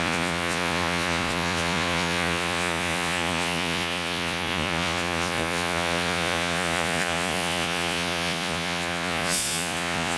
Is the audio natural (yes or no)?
no